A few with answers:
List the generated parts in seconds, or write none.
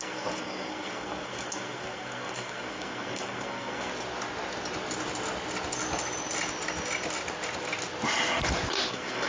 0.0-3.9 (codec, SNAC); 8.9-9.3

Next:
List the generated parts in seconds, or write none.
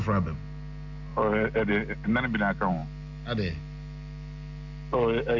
none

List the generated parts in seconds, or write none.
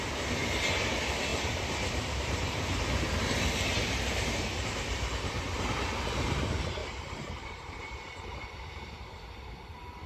1.3-5.4 (vocoder, BigVGAN v2); 6.8-9.5